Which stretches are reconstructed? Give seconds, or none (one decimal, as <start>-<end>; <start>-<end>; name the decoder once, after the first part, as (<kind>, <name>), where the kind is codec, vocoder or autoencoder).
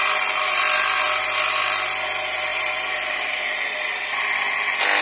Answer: none